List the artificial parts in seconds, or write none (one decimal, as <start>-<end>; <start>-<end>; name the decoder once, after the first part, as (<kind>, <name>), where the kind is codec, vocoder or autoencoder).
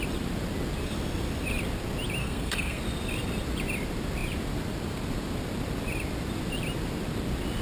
2.2-2.8 (codec, SNAC)